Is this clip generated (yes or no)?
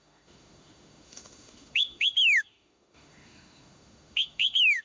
yes